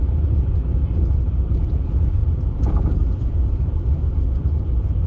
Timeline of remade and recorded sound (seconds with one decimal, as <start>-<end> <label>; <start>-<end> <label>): 0.0-0.8 remade; 0.8-1.5 recorded; 1.5-5.1 remade